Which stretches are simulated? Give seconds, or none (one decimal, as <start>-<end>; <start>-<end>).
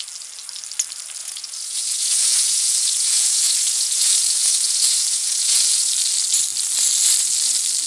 1.2-5.9